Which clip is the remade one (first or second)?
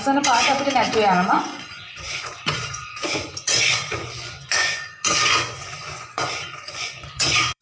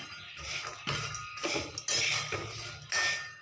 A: first